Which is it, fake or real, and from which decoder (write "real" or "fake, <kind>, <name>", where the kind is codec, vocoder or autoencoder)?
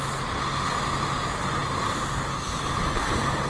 real